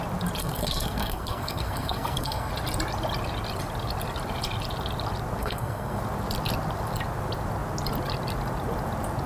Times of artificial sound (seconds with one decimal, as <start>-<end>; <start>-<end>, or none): 0.4-2.5; 5.4-6.0